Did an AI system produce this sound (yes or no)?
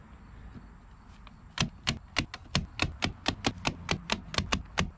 no